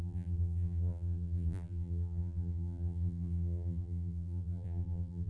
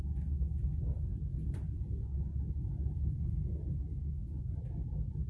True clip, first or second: second